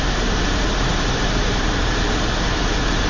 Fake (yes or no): yes